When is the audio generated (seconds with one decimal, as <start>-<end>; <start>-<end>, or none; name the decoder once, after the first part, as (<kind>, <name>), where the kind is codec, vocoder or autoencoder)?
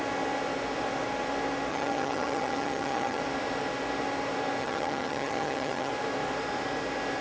1.7-3.2 (vocoder, HiFi-GAN); 4.6-5.9